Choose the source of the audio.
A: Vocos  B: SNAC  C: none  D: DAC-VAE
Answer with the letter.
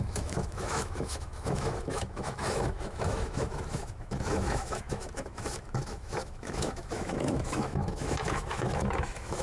D